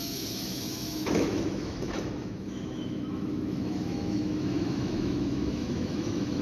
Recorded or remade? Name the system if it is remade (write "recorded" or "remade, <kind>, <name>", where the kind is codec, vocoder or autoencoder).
remade, autoencoder, DAC-VAE